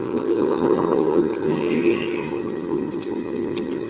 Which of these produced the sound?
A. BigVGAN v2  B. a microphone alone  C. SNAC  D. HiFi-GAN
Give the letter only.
D